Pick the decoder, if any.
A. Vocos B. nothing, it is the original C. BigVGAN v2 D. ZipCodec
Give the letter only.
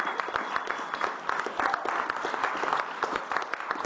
B